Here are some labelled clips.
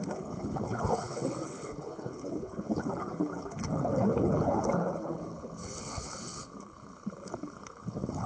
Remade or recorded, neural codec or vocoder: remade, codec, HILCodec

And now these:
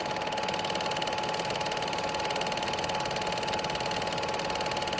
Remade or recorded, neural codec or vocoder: recorded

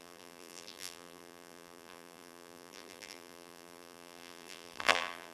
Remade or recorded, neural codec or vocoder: remade, vocoder, BigVGAN v2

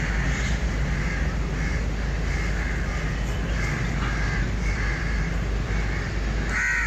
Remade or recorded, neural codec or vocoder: recorded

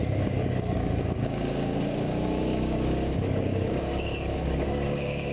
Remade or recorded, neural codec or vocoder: remade, codec, DAC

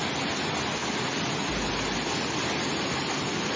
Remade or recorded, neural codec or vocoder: recorded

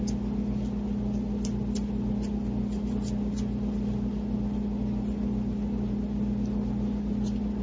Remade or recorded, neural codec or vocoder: recorded